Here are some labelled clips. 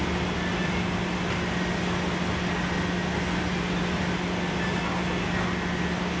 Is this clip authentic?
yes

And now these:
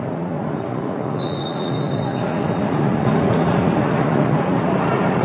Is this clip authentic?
no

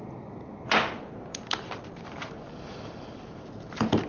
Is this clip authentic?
yes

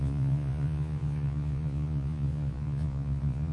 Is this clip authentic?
no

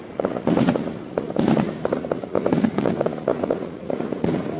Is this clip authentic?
no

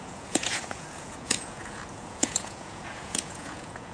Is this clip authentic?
no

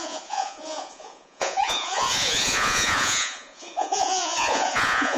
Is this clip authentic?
no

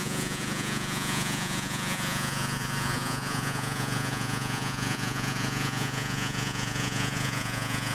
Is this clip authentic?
no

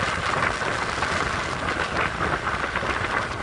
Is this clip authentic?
yes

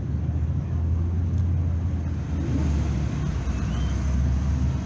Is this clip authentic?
yes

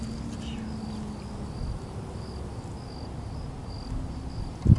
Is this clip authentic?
yes